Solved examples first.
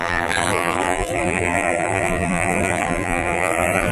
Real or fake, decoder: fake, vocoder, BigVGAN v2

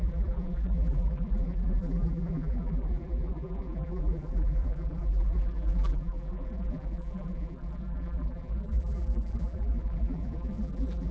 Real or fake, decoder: fake, vocoder, BigVGAN v2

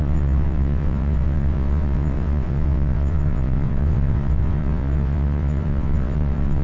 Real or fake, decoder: fake, vocoder, WaveNeXt